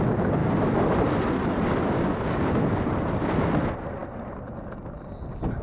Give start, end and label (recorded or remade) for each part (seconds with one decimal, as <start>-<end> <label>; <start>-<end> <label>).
0.0-5.6 recorded